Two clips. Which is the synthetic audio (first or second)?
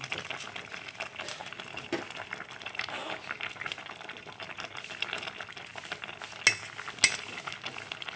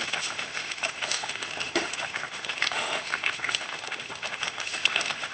second